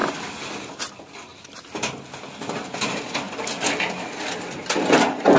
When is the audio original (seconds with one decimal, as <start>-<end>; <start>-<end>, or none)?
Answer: 0.0-5.4

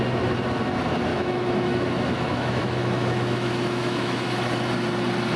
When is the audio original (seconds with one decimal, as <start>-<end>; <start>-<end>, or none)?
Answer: 0.0-1.1; 4.3-5.4